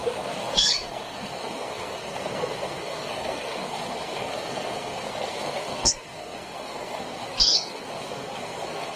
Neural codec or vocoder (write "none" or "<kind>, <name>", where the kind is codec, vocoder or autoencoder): codec, SNAC